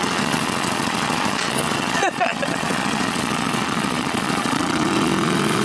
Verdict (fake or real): fake